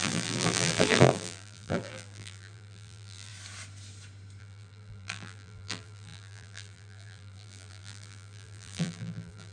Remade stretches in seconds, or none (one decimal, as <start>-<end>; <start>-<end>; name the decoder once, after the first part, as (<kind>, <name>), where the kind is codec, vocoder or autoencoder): 0.0-3.3 (vocoder, BigVGAN v2); 4.4-9.5